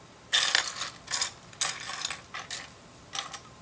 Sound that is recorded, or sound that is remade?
recorded